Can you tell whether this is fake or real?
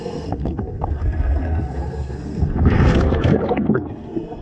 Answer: fake